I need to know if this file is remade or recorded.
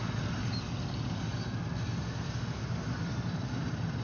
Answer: recorded